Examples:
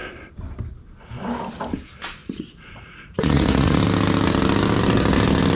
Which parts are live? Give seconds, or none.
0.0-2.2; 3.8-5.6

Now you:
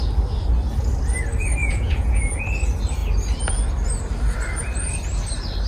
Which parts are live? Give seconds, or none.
0.0-1.6; 2.4-5.7